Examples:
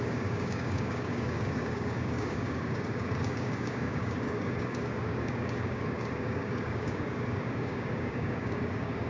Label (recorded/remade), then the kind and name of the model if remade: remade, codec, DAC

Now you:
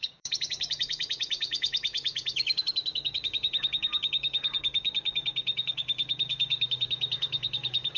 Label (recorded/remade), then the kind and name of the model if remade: remade, codec, DAC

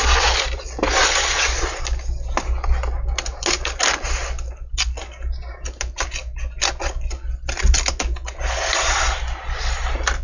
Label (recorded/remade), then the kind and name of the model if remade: recorded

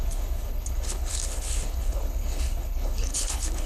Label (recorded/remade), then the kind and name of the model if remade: remade, codec, HILCodec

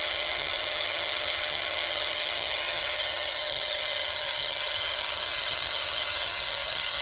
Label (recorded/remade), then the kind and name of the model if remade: remade, vocoder, HiFi-GAN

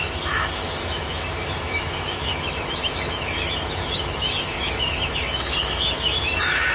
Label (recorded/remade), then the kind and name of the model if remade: remade, autoencoder, DAC-VAE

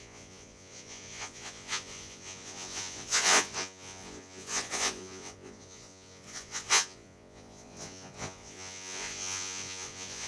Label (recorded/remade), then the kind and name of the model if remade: remade, vocoder, Vocos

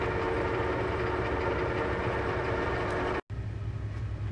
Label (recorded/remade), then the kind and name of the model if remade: recorded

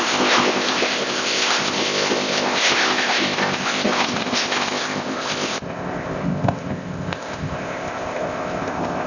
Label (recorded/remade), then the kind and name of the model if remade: remade, codec, ZipCodec